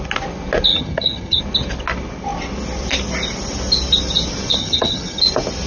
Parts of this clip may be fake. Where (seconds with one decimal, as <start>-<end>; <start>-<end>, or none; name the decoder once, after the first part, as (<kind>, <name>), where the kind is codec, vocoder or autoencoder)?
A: 0.7-1.4 (vocoder, HiFi-GAN); 4.6-5.2